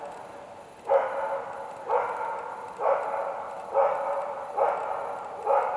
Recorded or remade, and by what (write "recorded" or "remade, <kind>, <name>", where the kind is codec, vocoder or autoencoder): recorded